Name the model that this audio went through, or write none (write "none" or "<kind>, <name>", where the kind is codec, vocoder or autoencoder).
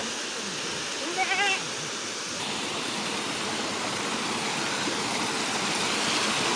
none